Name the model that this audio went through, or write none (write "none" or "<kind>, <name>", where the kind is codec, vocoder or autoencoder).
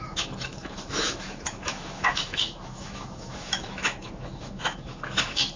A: autoencoder, DAC-VAE